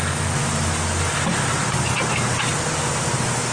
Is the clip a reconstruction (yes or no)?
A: no